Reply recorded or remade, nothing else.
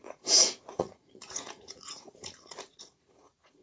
remade